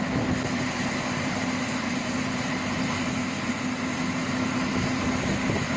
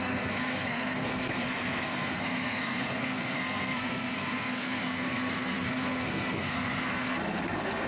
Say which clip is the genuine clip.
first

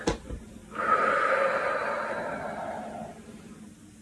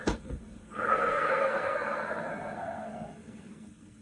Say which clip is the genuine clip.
first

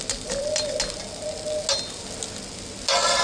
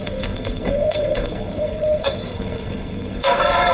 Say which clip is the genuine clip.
first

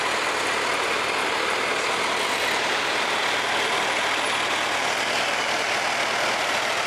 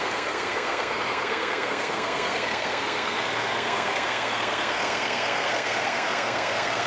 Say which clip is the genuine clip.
first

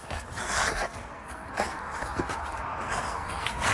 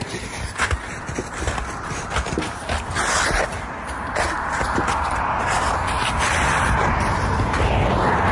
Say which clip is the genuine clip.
second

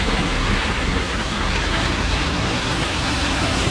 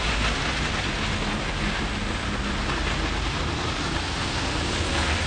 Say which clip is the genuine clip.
second